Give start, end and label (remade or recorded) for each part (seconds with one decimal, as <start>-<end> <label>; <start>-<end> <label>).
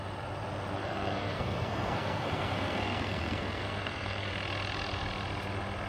0.0-0.8 recorded; 0.8-4.3 remade; 4.3-5.9 recorded